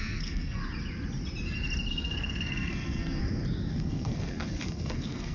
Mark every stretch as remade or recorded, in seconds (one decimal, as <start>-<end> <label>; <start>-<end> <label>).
0.0-0.6 remade; 0.6-1.9 recorded; 1.9-3.2 remade; 3.2-3.7 recorded; 3.7-5.3 remade